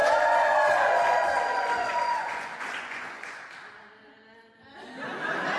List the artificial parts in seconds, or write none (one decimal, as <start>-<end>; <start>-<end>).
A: 0.0-3.4